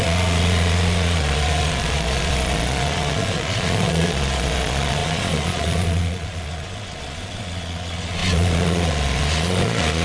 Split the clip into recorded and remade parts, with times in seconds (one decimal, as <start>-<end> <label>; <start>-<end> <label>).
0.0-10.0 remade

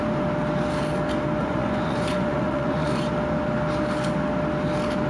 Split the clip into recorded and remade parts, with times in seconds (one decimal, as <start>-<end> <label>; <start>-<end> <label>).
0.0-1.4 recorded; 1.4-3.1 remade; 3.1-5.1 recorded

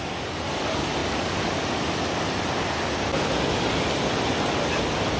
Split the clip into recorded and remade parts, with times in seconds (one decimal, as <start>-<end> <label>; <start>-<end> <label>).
0.0-5.2 recorded

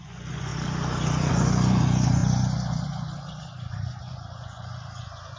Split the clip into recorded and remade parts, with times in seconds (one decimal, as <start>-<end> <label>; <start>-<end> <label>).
0.0-0.5 remade; 0.5-1.3 recorded; 1.3-5.4 remade

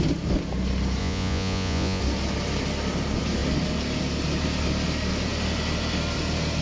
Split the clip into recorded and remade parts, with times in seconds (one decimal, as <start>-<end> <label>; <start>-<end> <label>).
0.0-1.0 recorded; 1.0-2.0 remade; 2.0-6.6 recorded

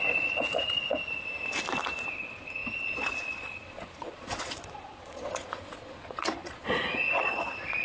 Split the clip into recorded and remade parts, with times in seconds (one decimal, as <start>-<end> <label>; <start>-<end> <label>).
0.0-1.0 remade; 1.0-2.1 recorded; 2.1-7.8 remade

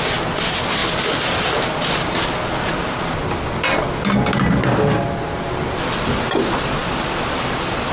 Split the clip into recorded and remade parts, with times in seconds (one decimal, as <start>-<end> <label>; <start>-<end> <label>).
0.0-7.9 recorded